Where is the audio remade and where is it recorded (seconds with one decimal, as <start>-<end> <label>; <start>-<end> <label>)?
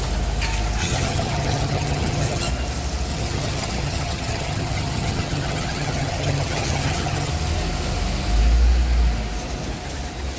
0.0-0.8 recorded; 0.8-2.5 remade; 2.5-3.1 recorded; 3.1-7.3 remade; 7.3-10.4 recorded